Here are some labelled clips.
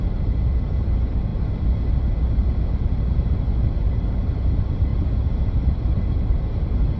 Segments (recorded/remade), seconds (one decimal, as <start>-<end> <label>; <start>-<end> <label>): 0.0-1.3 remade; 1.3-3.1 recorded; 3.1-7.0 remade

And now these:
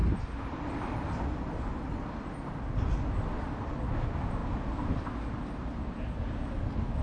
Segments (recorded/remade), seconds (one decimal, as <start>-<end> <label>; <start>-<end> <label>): 0.0-3.6 remade; 3.6-4.4 recorded; 4.4-6.2 remade; 6.2-7.0 recorded

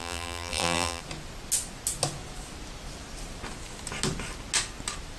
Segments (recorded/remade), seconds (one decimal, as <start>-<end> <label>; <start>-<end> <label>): 0.0-1.0 remade; 1.0-5.2 recorded

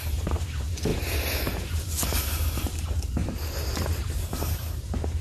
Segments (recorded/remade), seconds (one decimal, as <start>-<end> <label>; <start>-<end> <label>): 0.0-5.2 remade